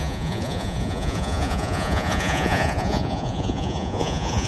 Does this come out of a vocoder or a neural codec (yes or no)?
yes